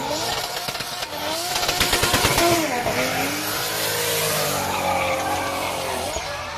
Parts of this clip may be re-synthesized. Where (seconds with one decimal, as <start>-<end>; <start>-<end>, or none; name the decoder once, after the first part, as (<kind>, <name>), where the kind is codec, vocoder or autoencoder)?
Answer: none

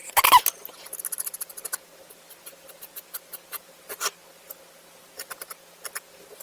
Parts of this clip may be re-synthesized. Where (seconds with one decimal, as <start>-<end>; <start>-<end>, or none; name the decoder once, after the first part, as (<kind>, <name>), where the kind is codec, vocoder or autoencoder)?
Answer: none

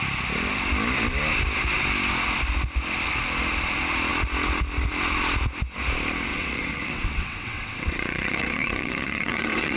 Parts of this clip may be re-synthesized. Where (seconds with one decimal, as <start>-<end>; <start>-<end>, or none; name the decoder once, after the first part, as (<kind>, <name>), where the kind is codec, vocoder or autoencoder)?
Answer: 6.3-9.8 (vocoder, WaveNeXt)

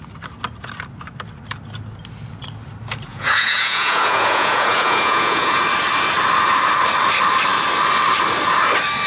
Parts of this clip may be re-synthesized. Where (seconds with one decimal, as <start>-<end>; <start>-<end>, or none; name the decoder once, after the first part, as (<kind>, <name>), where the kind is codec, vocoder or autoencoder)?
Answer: 3.1-5.6 (vocoder, Vocos)

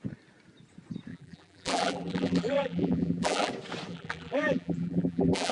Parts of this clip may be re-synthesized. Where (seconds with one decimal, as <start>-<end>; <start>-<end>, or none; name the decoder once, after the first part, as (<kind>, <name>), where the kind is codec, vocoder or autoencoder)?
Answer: 1.1-3.5 (vocoder, BigVGAN v2); 3.9-5.5

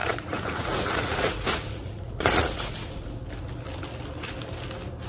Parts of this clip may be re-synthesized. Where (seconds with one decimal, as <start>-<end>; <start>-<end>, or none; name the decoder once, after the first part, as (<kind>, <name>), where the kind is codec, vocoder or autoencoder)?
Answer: 0.0-3.1 (vocoder, Vocos)

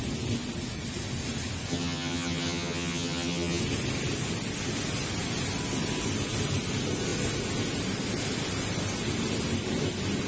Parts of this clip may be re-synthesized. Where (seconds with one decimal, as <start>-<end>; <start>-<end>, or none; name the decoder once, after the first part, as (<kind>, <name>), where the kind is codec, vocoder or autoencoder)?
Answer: 1.7-3.6 (vocoder, HiFi-GAN)

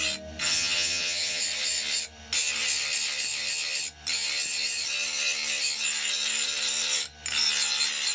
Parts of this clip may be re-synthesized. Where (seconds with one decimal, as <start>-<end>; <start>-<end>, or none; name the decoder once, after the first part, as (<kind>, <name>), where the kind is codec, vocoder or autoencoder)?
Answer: 0.4-1.4 (vocoder, HiFi-GAN)